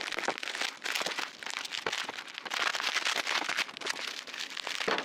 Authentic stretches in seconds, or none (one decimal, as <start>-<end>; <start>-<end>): 0.0-5.0